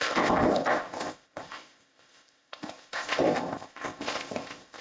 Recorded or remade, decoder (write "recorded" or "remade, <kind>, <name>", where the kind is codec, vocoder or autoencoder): remade, codec, ZipCodec